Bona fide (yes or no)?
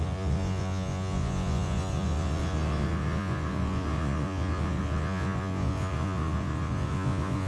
no